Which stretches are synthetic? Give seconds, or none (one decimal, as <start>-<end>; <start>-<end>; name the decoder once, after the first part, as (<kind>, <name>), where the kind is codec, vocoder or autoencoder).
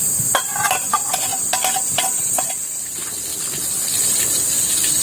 none